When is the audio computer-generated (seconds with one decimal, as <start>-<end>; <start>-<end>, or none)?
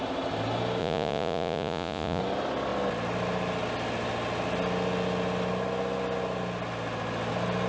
0.8-2.2